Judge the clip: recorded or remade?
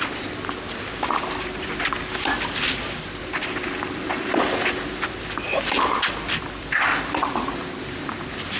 recorded